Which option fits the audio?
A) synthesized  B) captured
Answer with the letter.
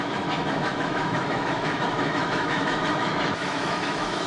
A